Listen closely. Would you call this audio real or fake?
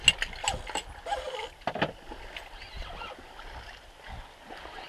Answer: real